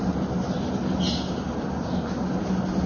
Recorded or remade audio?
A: recorded